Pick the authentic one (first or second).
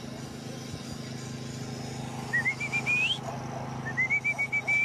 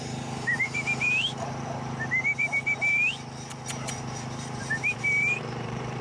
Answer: first